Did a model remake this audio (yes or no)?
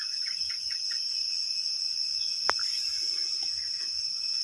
no